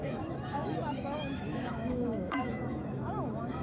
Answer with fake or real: fake